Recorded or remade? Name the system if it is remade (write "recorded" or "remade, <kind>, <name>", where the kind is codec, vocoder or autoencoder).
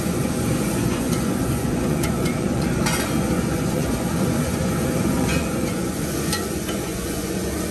remade, vocoder, Vocos